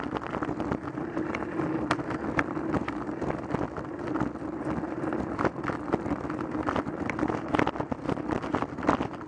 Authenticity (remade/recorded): recorded